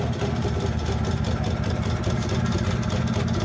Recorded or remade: recorded